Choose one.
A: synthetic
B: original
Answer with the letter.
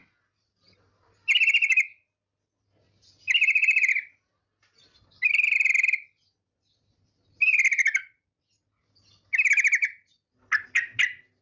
B